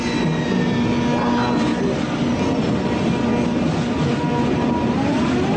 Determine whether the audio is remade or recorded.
recorded